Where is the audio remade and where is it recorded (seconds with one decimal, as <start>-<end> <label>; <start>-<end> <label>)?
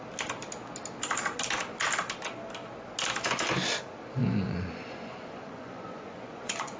0.0-4.2 recorded; 4.2-6.8 remade